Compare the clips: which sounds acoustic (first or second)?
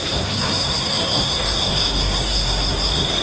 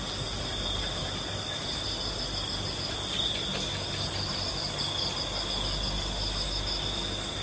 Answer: second